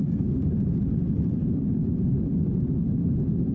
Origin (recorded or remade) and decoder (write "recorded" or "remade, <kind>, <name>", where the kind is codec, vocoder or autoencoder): recorded